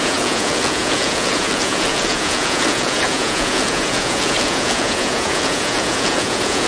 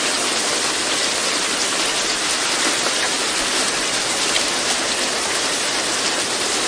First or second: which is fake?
first